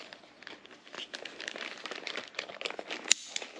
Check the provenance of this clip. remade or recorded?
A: recorded